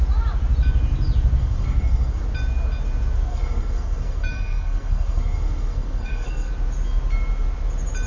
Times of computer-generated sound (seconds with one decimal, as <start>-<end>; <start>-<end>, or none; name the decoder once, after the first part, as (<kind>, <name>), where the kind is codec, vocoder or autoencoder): 1.4-2.2 (codec, SNAC); 3.3-6.5